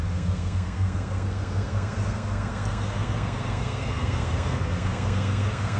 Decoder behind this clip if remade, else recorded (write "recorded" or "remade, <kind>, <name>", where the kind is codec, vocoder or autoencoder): remade, codec, SNAC